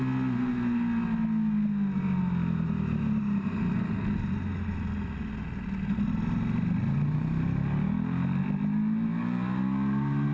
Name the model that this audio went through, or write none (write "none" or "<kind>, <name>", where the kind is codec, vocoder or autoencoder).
none